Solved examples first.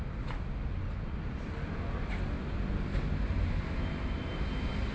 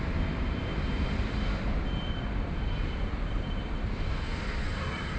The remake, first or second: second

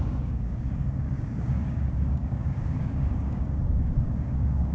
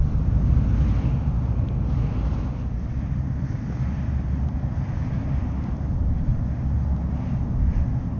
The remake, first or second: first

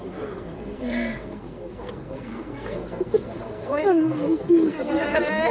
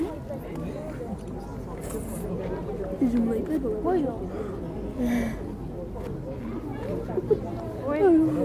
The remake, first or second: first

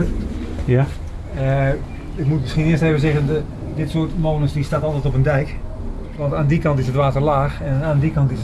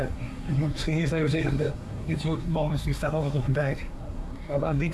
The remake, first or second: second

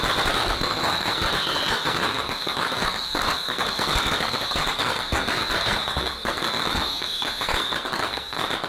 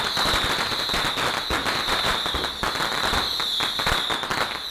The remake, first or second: first